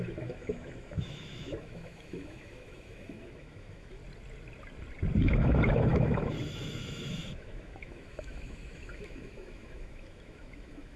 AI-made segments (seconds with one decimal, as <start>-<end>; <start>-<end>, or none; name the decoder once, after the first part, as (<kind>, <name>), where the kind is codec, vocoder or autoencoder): 0.0-4.0 (autoencoder, DAC-VAE); 5.2-11.0

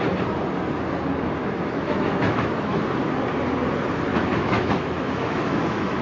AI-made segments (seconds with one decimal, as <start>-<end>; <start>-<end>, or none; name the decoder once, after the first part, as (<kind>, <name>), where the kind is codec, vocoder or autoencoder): 1.4-2.9 (autoencoder, DAC-VAE); 4.1-6.0

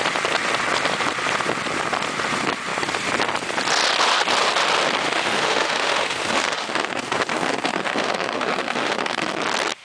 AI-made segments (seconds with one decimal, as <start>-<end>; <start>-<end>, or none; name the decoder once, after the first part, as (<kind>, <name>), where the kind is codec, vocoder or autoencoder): 5.0-9.4 (autoencoder, DAC-VAE)

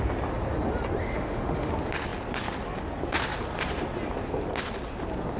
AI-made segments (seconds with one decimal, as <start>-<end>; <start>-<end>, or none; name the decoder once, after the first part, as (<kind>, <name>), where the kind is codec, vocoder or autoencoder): 1.0-1.7 (autoencoder, DAC-VAE)

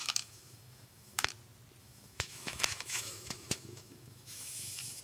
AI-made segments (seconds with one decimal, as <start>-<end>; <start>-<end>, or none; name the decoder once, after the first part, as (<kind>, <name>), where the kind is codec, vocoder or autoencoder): 0.0-1.3 (autoencoder, DAC-VAE); 1.8-5.0

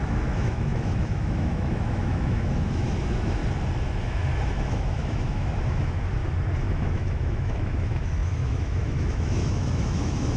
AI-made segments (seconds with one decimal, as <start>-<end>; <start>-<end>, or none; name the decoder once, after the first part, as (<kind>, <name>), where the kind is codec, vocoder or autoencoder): 0.0-3.4 (autoencoder, DAC-VAE); 4.0-6.2; 6.7-10.4